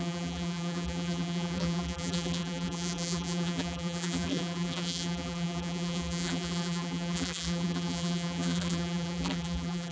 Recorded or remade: remade